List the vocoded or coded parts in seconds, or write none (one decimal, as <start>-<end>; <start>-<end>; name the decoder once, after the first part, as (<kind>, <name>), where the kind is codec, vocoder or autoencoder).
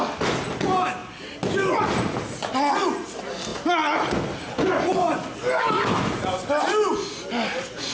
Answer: none